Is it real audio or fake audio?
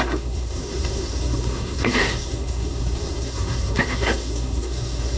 fake